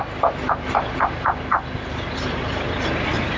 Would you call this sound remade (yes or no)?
yes